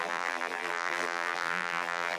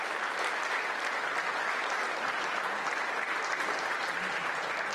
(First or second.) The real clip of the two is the second